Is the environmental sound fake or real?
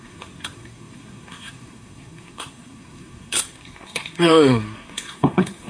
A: fake